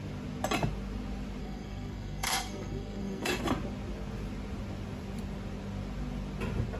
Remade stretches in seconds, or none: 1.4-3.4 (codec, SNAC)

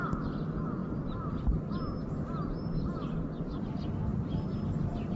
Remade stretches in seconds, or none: 0.8-1.7 (vocoder, BigVGAN v2); 4.1-5.2

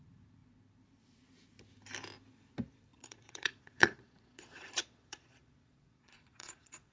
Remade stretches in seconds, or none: 2.9-6.9 (vocoder, Vocos)

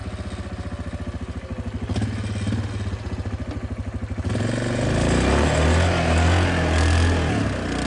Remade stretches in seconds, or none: none

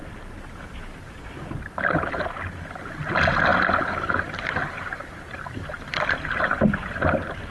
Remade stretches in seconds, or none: none

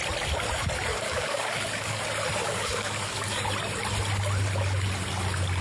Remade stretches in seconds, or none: 0.9-2.0 (codec, DAC); 2.4-3.4

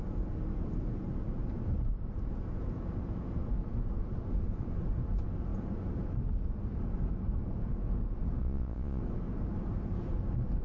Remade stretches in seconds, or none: 8.4-9.0 (vocoder, Vocos)

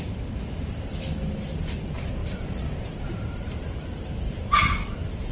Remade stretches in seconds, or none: none